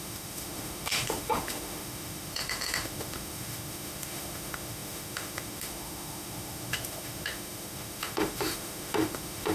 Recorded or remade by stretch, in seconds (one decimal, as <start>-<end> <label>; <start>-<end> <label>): 0.0-9.5 remade